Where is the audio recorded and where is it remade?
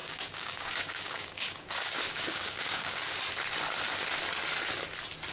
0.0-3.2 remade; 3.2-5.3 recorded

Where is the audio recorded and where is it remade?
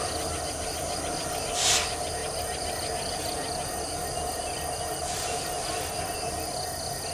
0.0-7.1 recorded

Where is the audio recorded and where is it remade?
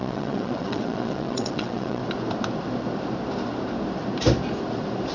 0.0-2.0 remade; 2.0-5.1 recorded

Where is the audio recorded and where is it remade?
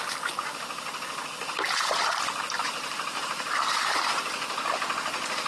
0.0-2.6 recorded; 2.6-4.2 remade; 4.2-5.5 recorded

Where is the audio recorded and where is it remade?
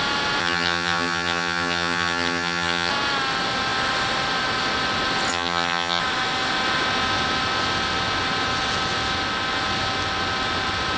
0.0-0.4 recorded; 0.4-2.9 remade; 2.9-5.3 recorded; 5.3-6.0 remade; 6.0-11.0 recorded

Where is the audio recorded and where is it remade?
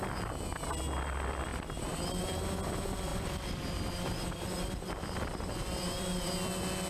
0.0-1.5 recorded; 1.5-2.7 remade; 2.7-3.1 recorded; 3.1-6.3 remade; 6.3-6.9 recorded